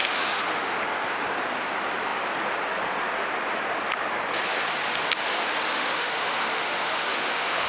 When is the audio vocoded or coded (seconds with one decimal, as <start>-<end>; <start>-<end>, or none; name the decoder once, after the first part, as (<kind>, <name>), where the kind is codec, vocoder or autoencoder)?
0.0-0.8 (autoencoder, DAC-VAE); 5.6-7.7